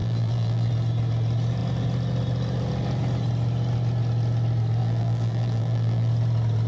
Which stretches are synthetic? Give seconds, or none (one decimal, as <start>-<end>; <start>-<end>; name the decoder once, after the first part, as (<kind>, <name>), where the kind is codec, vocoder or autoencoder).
0.0-0.7 (vocoder, BigVGAN v2); 4.8-6.1